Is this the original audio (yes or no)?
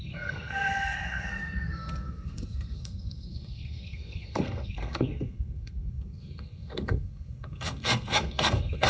no